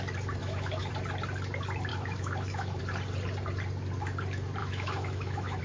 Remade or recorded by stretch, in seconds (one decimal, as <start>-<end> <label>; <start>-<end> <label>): 0.0-0.4 recorded; 0.4-0.9 remade; 0.9-1.9 recorded; 1.9-2.8 remade; 2.8-4.6 recorded; 4.6-5.6 remade